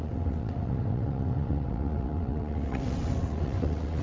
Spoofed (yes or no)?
yes